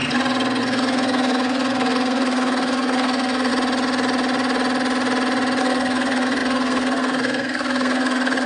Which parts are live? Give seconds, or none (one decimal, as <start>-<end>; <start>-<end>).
0.0-0.6; 3.5-5.6